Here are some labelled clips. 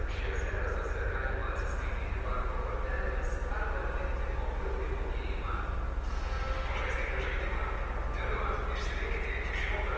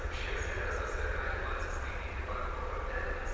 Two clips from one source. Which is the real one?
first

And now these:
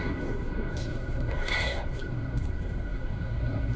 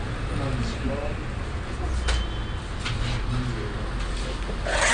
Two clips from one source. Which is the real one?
second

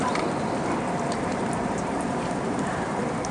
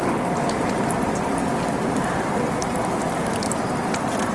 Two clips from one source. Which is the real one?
second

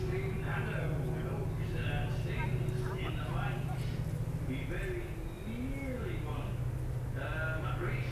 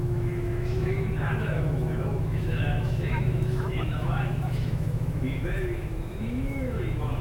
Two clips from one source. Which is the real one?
first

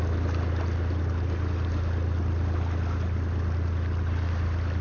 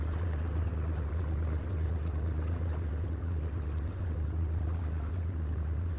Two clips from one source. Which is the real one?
first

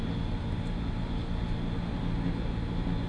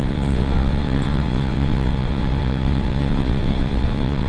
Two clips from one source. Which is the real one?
first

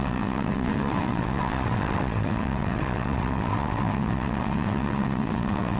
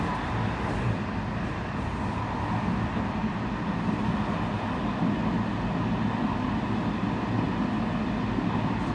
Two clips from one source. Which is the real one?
second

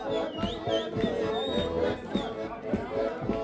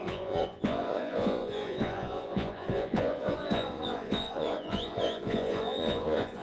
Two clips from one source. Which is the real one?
first